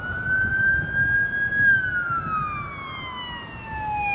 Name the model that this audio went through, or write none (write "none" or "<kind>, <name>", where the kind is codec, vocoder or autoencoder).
none